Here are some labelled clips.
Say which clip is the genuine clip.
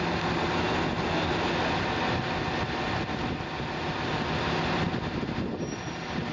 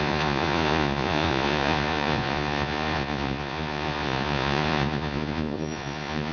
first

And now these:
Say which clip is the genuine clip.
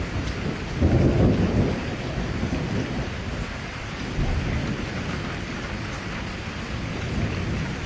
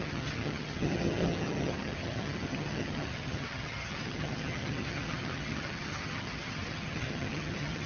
first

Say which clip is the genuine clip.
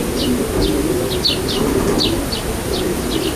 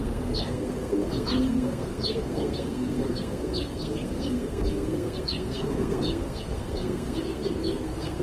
first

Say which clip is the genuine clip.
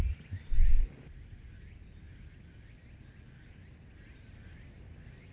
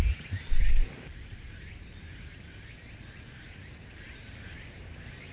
first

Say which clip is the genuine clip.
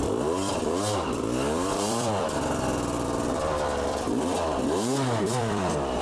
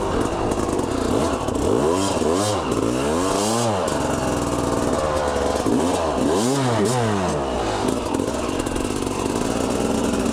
second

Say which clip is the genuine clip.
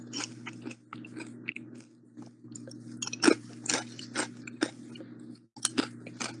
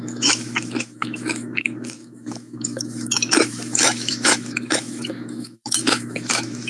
first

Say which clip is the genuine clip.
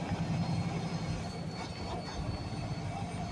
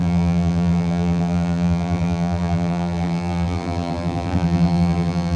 first